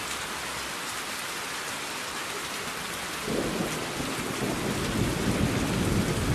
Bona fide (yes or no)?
yes